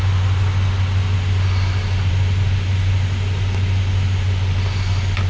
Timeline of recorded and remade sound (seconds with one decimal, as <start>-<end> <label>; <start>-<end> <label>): 0.0-5.3 recorded